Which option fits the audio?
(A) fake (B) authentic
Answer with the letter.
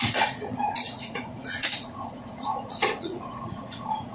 A